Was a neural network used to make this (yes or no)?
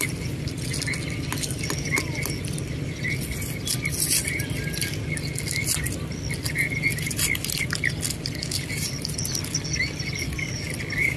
no